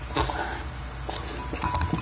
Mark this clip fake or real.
real